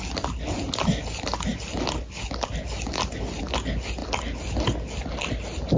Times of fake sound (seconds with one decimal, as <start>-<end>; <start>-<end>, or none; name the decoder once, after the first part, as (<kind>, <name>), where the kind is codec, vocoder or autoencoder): none